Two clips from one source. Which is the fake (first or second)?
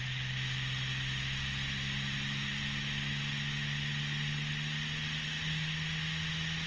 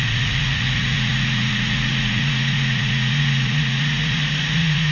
second